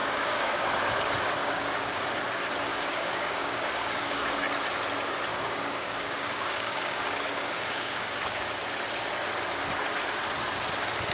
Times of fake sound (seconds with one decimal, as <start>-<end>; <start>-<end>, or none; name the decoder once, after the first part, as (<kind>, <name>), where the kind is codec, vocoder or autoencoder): 0.0-0.7 (codec, DAC); 1.4-2.2; 2.7-4.4; 5.3-8.5